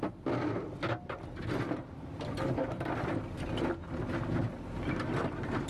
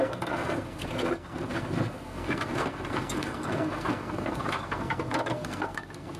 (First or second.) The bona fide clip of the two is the first